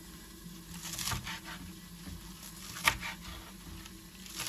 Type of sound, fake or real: real